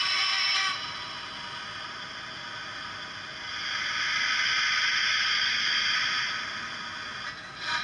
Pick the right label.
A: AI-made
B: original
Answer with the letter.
B